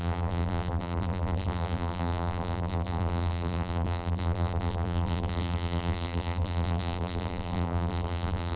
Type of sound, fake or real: fake